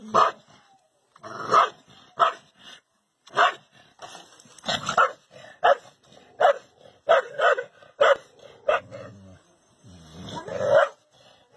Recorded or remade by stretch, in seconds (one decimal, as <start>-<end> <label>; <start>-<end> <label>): 0.0-11.6 recorded